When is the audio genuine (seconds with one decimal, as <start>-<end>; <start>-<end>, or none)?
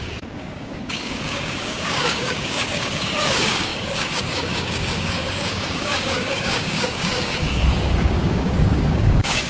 none